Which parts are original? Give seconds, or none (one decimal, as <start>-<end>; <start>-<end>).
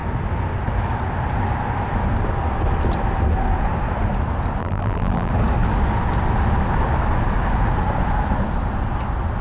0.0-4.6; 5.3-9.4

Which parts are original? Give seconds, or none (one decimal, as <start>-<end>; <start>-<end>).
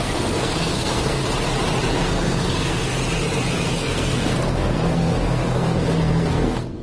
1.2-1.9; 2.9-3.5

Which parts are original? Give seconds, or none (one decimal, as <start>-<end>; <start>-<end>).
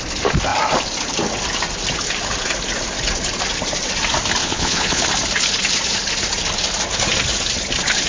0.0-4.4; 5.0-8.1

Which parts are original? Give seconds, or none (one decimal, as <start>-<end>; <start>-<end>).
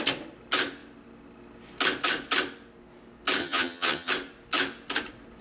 0.0-3.4; 4.1-5.4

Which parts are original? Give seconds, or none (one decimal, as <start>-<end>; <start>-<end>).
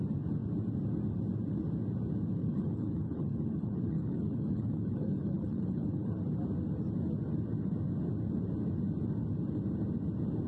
0.0-2.4; 6.2-10.5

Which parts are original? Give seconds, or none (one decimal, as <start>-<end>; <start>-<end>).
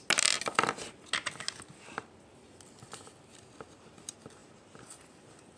0.0-5.6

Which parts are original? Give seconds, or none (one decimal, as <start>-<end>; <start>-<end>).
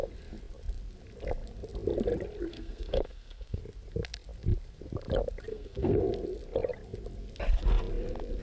0.0-2.5; 3.6-5.5; 6.0-8.4